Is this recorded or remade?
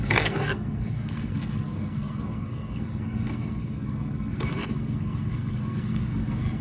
remade